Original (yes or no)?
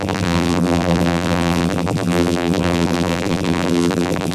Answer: no